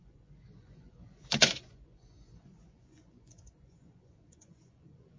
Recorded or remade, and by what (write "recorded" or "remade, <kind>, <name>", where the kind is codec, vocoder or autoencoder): remade, vocoder, Vocos